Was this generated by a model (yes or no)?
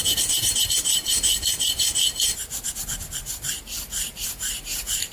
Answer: yes